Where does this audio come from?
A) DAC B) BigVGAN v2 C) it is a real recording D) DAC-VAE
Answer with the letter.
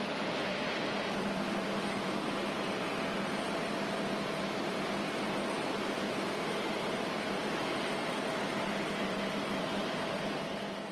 B